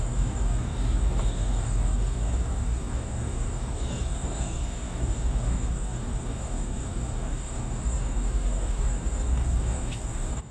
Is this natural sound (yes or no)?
no